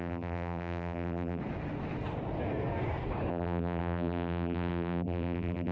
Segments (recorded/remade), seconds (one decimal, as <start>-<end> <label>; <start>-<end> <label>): 0.0-1.4 remade; 1.4-3.3 recorded; 3.3-5.7 remade